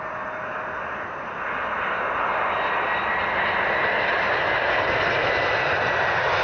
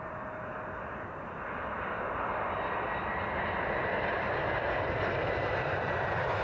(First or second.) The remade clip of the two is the second